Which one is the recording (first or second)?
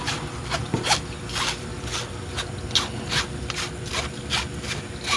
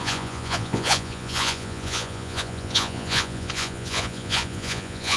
first